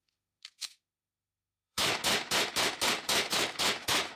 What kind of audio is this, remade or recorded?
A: remade